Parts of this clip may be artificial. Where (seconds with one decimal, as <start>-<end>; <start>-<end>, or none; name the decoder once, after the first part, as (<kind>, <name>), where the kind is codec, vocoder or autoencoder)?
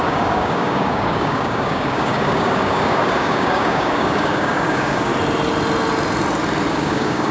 0.0-5.1 (codec, DAC); 6.7-7.3